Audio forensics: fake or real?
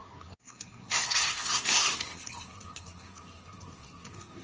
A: fake